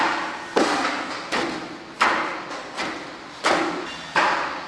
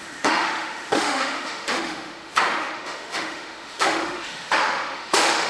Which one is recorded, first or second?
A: first